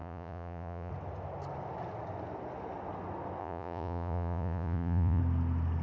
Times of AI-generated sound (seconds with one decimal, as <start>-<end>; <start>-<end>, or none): 0.0-0.9; 3.4-5.2